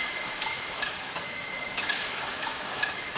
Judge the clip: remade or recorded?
remade